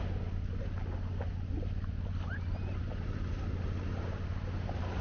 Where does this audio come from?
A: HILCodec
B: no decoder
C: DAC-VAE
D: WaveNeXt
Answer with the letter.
B